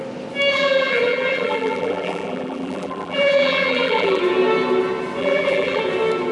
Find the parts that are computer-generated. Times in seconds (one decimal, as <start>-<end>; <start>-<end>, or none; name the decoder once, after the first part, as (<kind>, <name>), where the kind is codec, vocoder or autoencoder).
0.5-4.2 (vocoder, BigVGAN v2); 5.2-5.8